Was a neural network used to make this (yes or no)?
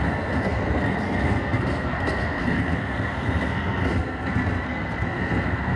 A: yes